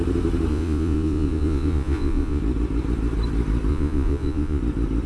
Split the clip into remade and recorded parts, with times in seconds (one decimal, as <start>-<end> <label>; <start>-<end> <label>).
0.0-0.5 recorded; 0.5-2.4 remade; 2.4-3.7 recorded; 3.7-4.6 remade; 4.6-5.1 recorded